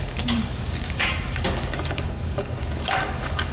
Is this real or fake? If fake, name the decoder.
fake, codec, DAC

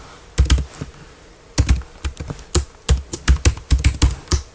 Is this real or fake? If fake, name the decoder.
real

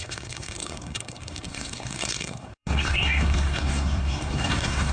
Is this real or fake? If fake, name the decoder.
fake, codec, SNAC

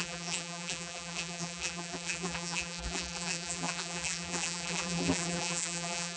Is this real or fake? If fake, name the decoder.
fake, vocoder, BigVGAN v2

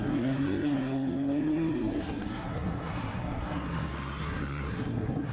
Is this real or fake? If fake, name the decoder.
fake, codec, SNAC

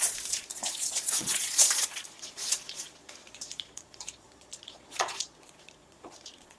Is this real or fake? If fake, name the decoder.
fake, vocoder, Vocos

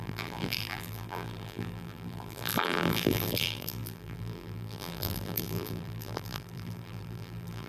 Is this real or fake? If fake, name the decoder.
fake, vocoder, BigVGAN v2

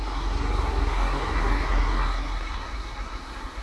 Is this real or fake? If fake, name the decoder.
fake, codec, SNAC